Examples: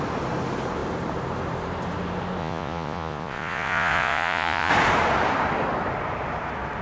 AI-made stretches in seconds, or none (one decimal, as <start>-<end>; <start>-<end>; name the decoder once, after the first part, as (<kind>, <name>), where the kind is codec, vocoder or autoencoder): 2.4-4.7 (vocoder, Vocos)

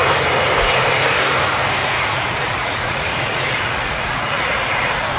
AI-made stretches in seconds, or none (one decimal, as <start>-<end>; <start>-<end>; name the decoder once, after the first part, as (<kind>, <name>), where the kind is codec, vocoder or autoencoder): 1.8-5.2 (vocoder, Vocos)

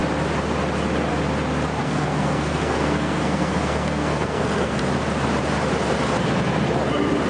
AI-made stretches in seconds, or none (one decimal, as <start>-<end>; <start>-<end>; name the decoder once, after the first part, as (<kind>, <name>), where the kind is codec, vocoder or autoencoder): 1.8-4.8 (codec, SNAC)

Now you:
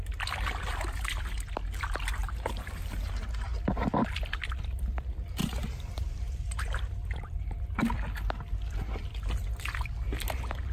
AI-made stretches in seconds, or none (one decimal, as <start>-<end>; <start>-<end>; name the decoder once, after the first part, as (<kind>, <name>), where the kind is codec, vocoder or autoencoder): 2.2-3.1 (vocoder, BigVGAN v2); 5.4-7.6

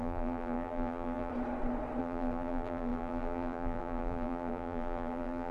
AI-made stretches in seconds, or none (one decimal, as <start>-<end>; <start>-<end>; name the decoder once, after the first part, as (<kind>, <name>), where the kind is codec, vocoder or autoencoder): 0.0-1.3 (vocoder, BigVGAN v2); 2.0-5.5

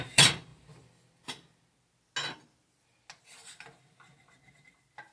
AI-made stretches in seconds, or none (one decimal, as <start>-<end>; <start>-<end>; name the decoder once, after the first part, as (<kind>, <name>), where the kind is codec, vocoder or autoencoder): none

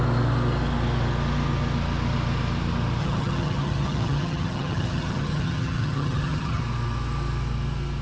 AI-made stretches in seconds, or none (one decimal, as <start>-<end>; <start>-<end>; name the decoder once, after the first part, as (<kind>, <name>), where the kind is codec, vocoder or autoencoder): 3.0-6.6 (vocoder, HiFi-GAN)